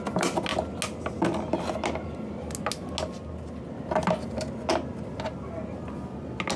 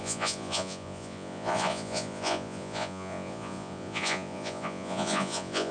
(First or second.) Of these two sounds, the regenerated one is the second